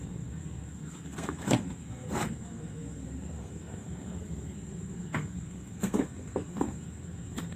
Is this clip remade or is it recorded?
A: remade